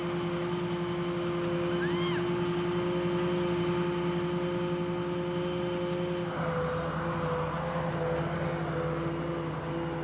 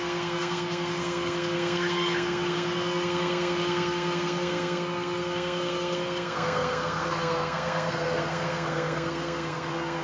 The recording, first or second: first